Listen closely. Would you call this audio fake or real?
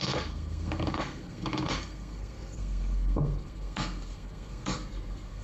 fake